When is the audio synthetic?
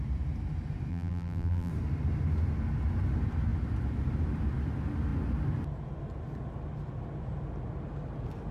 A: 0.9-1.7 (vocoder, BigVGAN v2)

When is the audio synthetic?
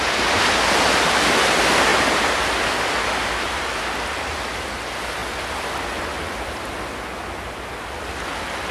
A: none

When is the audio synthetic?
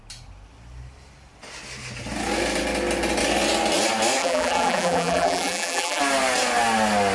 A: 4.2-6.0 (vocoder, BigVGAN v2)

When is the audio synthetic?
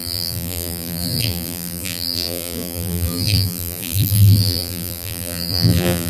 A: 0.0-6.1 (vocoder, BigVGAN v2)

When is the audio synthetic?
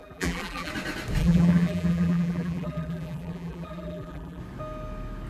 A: 0.0-0.7 (vocoder, BigVGAN v2); 1.2-4.4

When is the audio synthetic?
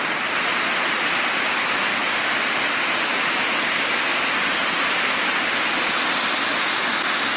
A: none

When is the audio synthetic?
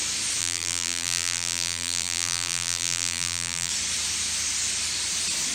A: 0.4-3.7 (vocoder, BigVGAN v2)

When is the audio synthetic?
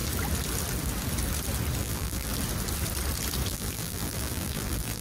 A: 1.8-2.3 (vocoder, BigVGAN v2); 3.5-5.0